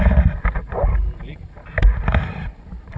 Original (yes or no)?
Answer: no